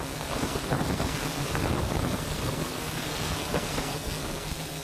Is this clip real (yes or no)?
no